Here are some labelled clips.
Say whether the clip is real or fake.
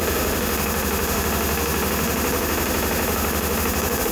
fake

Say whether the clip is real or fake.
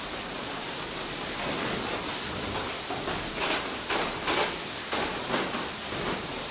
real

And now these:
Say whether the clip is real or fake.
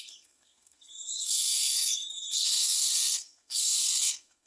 fake